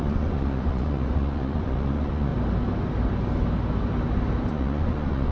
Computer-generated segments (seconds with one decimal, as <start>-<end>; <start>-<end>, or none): 0.0-2.3; 4.5-5.3

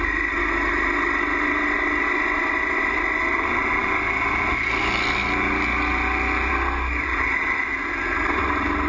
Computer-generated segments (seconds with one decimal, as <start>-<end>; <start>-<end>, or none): none

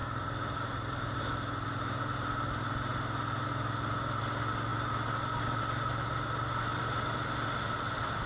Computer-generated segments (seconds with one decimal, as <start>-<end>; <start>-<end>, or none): 0.0-1.2

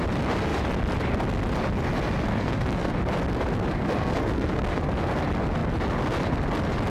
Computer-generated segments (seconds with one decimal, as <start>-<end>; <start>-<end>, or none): 2.3-2.9; 3.7-4.8